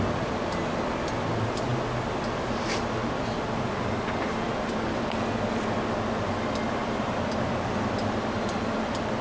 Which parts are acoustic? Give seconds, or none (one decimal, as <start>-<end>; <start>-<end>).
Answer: 0.0-9.2